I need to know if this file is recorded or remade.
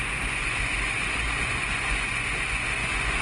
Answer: remade